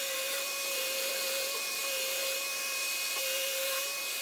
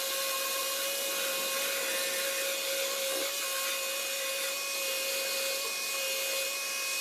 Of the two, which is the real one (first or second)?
second